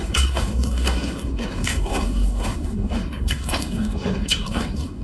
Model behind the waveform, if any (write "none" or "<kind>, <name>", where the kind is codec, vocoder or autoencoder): codec, SNAC